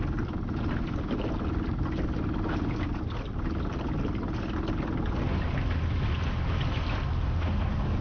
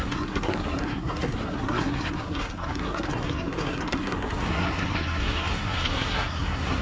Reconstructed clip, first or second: second